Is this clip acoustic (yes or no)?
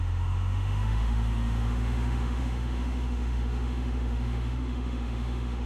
no